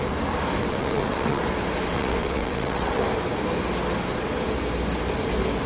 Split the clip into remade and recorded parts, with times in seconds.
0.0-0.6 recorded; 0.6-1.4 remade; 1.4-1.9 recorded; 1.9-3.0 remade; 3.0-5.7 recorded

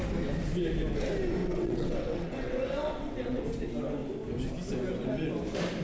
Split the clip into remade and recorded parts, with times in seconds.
0.0-1.4 recorded; 1.4-3.4 remade; 3.4-5.8 recorded

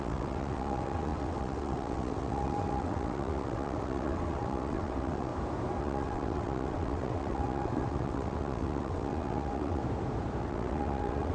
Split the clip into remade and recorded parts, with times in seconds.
0.0-5.3 remade; 5.3-5.8 recorded; 5.8-9.8 remade; 9.8-10.4 recorded; 10.4-11.3 remade

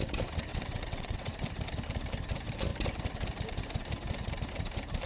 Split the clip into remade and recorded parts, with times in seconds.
0.0-0.5 recorded; 0.5-1.3 remade; 1.3-5.1 recorded

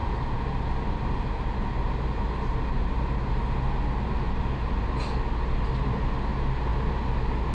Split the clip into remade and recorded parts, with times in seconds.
0.0-7.5 recorded

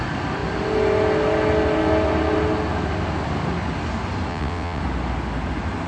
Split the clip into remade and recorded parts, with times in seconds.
0.0-4.3 recorded; 4.3-4.8 remade; 4.8-5.9 recorded

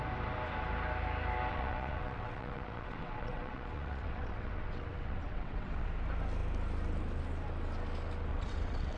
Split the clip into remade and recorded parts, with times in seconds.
0.0-1.5 recorded; 1.5-5.9 remade; 5.9-8.3 recorded; 8.3-9.0 remade

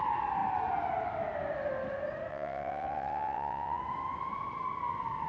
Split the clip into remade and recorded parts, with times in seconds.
0.0-2.3 recorded; 2.3-3.8 remade; 3.8-5.3 recorded